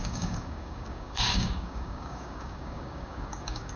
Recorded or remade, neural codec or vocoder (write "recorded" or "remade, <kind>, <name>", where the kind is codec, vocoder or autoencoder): remade, codec, DAC